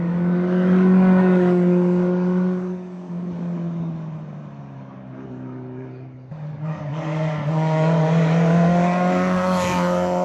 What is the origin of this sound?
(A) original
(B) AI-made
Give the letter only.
B